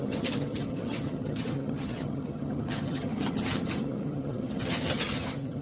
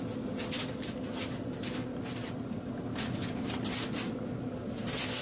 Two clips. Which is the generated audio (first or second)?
first